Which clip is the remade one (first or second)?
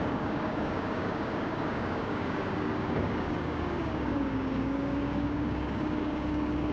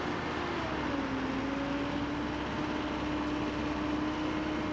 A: first